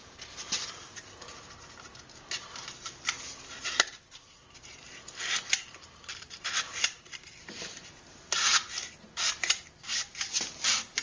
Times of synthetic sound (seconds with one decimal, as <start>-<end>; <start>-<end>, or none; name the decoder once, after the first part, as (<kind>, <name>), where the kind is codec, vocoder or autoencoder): 4.8-11.0 (vocoder, BigVGAN v2)